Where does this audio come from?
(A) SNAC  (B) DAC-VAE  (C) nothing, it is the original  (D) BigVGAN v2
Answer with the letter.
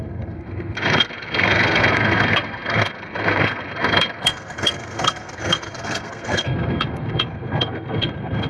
A